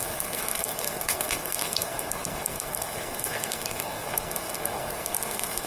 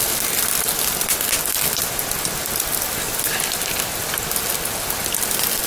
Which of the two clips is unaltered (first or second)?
second